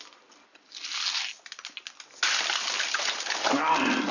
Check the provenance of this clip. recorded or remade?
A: recorded